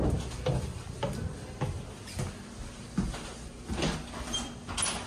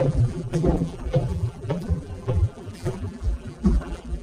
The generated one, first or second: second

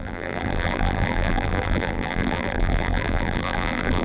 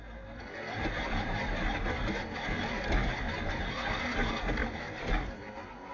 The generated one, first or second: first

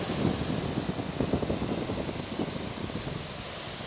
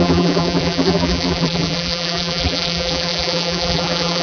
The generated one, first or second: second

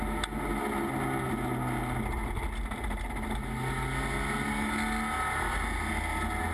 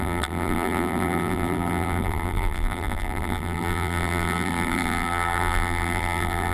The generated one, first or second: second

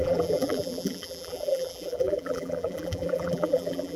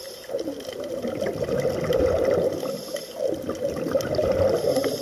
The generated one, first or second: first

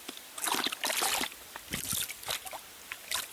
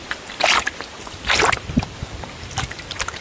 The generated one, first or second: second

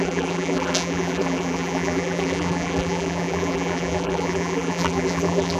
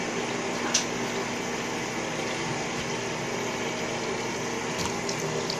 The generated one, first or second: first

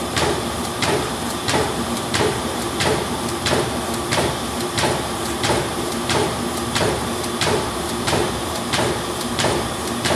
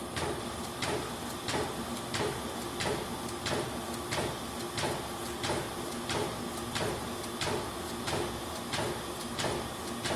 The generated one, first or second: first